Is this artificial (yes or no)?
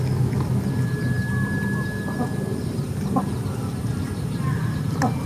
no